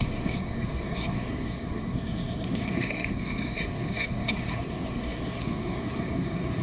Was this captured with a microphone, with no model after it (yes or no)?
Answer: no